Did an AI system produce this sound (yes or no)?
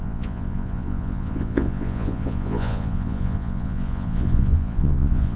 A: yes